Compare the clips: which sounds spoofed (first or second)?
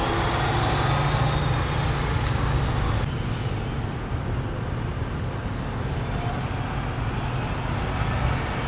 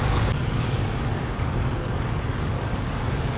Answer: second